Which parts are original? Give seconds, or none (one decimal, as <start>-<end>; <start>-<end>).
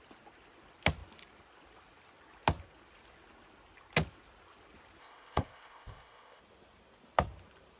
0.0-5.0; 6.4-7.8